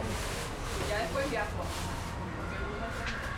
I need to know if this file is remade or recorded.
remade